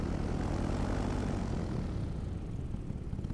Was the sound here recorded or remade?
recorded